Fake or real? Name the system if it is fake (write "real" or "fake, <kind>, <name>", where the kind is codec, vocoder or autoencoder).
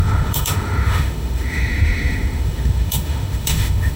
fake, autoencoder, DAC-VAE